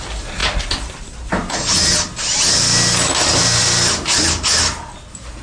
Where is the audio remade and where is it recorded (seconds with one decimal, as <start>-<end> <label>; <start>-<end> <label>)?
0.0-5.4 recorded